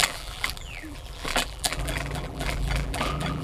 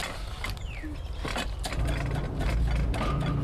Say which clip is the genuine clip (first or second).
second